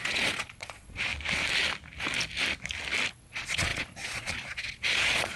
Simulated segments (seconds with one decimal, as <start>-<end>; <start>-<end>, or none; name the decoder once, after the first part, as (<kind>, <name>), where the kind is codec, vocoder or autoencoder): 0.0-1.1 (vocoder, Vocos); 3.1-5.4